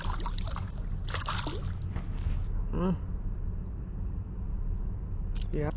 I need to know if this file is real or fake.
real